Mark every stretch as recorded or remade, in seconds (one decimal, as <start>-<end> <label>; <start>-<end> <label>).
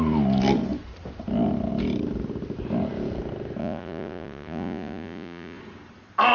0.0-3.6 recorded; 3.6-5.6 remade; 5.6-6.3 recorded